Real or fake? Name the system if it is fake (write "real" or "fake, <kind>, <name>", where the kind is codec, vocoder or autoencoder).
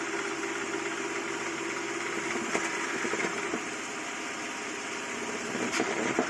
real